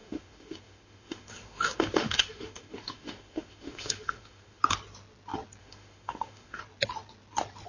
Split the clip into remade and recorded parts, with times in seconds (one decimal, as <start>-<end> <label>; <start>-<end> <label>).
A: 0.0-4.6 remade; 4.6-5.6 recorded; 5.6-6.6 remade; 6.6-7.7 recorded